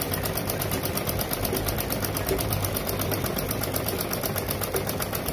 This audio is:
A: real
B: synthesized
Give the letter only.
B